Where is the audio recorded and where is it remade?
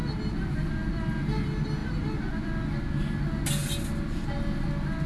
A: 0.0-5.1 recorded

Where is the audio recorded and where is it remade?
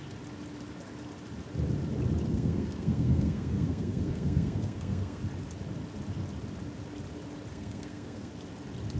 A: 0.0-2.3 recorded; 2.3-5.2 remade; 5.2-7.5 recorded; 7.5-8.3 remade; 8.3-9.0 recorded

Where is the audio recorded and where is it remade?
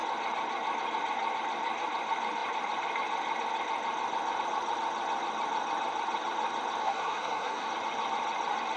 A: 0.0-6.8 recorded; 6.8-7.7 remade; 7.7-8.8 recorded